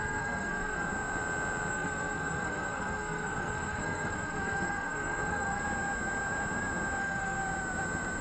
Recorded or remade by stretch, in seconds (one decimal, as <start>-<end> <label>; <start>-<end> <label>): 0.0-0.9 remade; 0.9-1.7 recorded; 1.7-5.6 remade; 5.6-7.0 recorded; 7.0-7.4 remade; 7.4-8.2 recorded